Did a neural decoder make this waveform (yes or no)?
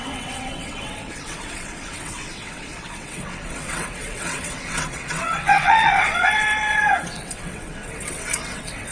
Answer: yes